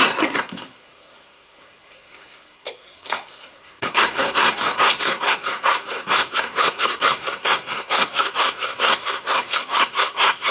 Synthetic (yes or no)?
yes